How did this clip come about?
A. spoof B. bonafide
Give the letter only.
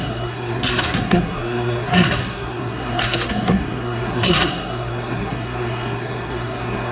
A